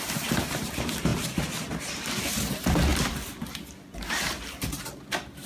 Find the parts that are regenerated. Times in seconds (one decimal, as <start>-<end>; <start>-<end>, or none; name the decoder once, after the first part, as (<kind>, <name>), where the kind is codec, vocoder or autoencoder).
none